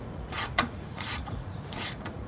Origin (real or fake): fake